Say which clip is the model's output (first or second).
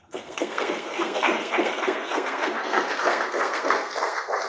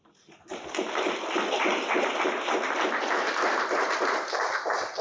first